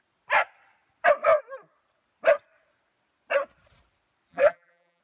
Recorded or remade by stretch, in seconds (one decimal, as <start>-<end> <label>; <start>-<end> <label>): 0.0-4.3 recorded; 4.3-5.0 remade